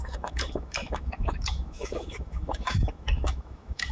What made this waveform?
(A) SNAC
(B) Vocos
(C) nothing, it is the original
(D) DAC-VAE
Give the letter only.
D